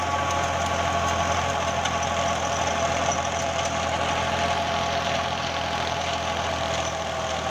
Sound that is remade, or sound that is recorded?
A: recorded